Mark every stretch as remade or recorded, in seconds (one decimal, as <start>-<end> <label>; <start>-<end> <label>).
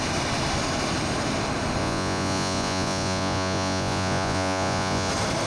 0.0-1.8 recorded; 1.8-5.1 remade; 5.1-5.5 recorded